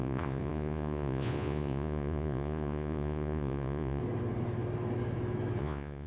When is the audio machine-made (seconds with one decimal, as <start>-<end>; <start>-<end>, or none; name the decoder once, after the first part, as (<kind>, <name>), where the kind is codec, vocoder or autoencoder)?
0.0-4.0 (vocoder, Vocos); 5.6-6.1